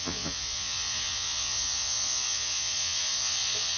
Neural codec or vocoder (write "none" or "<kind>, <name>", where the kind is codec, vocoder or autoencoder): vocoder, Vocos